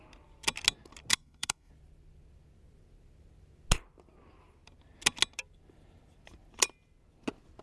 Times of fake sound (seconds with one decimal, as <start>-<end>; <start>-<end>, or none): 1.1-1.7